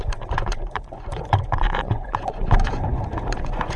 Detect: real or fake fake